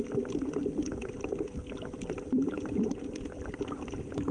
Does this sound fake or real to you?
fake